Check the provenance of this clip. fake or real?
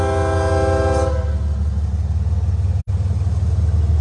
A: real